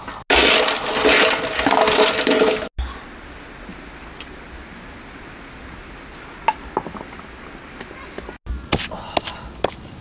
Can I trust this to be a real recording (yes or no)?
yes